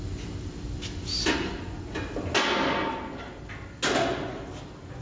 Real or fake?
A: real